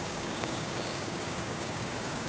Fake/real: fake